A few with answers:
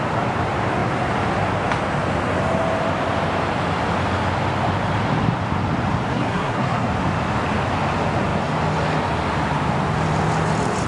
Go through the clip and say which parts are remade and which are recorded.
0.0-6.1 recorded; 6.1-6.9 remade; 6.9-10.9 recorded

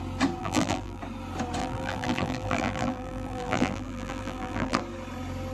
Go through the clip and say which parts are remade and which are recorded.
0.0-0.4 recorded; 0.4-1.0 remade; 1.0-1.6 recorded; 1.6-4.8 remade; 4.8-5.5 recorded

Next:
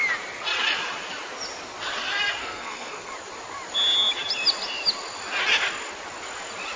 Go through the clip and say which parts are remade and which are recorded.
0.0-2.4 recorded; 2.4-3.1 remade; 3.1-6.8 recorded

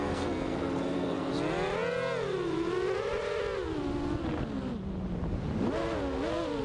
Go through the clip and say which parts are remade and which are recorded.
0.0-1.3 remade; 1.3-6.6 recorded

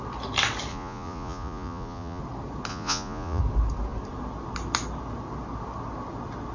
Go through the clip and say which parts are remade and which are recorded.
0.0-0.7 recorded; 0.7-2.2 remade; 2.2-2.7 recorded; 2.7-3.4 remade; 3.4-6.5 recorded

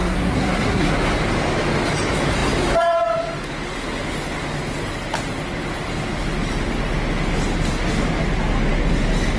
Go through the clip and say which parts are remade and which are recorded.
0.0-0.9 remade; 0.9-9.4 recorded

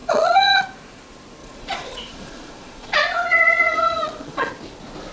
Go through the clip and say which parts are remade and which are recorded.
0.0-0.6 remade; 0.6-1.4 recorded; 1.4-4.5 remade; 4.5-5.1 recorded

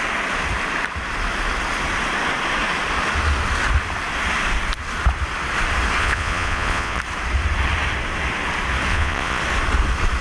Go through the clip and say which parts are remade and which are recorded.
0.0-6.0 recorded; 6.0-7.0 remade; 7.0-8.9 recorded; 8.9-9.4 remade; 9.4-10.2 recorded